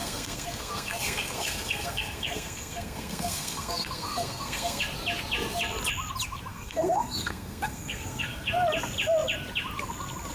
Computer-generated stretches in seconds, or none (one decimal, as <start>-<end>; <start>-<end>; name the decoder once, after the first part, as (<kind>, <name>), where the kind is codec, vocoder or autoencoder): 0.0-4.8 (codec, SNAC); 6.5-8.5